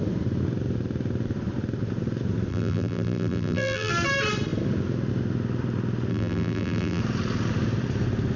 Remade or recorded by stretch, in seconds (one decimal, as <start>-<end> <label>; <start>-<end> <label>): 0.0-2.5 recorded; 2.5-3.9 remade; 3.9-6.1 recorded; 6.1-7.0 remade; 7.0-8.4 recorded